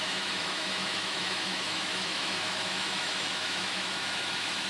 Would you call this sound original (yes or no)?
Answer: no